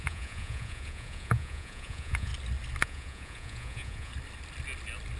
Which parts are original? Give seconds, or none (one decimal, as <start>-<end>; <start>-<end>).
2.3-2.8; 4.1-5.2